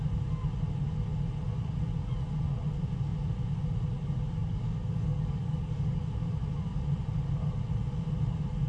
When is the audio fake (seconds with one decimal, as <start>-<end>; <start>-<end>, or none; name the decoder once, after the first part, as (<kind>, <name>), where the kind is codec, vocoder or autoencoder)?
4.4-6.0 (codec, DAC)